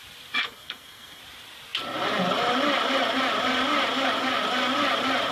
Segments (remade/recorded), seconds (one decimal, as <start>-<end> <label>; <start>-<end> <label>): 0.0-0.4 recorded; 0.4-1.2 remade; 1.2-5.3 recorded